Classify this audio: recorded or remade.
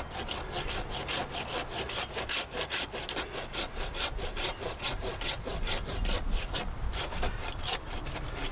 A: recorded